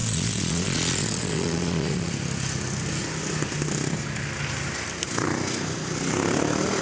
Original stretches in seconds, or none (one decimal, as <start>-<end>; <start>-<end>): 2.1-6.8